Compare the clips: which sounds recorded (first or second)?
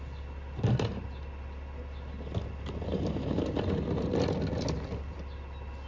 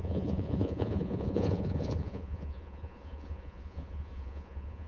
first